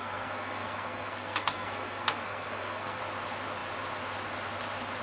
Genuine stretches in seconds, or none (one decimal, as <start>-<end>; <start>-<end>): 3.0-5.0